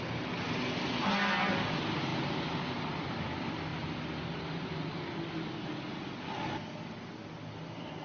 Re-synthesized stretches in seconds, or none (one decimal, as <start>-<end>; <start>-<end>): none